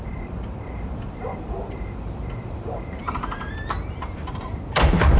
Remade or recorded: remade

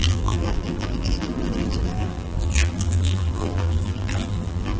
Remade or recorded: remade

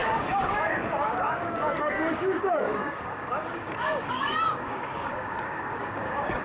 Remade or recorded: remade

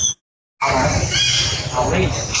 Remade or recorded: recorded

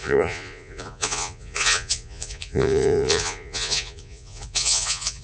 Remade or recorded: remade